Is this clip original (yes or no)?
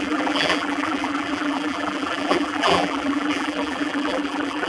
no